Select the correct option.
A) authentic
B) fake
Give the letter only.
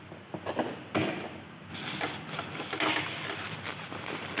A